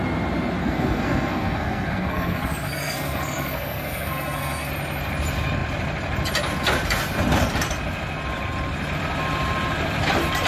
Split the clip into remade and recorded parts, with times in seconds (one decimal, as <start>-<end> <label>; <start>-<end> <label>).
0.0-0.6 recorded; 0.6-4.7 remade; 4.7-10.5 recorded